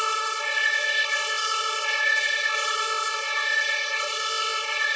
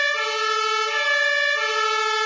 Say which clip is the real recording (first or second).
second